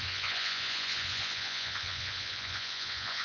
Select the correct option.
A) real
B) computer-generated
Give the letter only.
B